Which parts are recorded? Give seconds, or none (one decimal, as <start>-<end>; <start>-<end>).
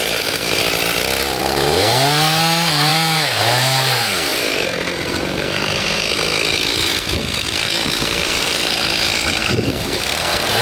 0.6-1.4